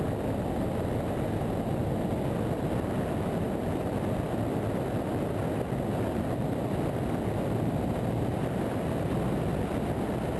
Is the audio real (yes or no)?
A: yes